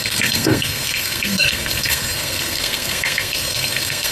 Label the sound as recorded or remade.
remade